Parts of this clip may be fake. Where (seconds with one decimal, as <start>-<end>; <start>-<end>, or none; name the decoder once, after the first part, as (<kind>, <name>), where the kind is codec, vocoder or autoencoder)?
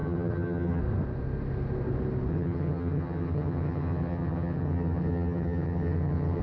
0.0-0.8 (vocoder, HiFi-GAN); 2.3-6.4